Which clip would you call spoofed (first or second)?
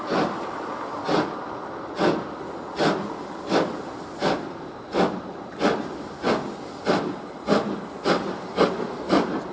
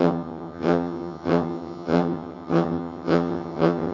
second